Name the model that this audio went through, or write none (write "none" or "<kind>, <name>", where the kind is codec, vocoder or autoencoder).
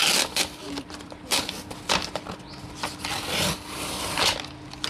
none